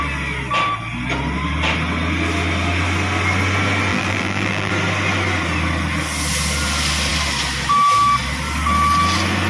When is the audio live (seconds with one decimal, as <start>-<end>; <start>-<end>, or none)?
0.0-3.9; 4.7-9.5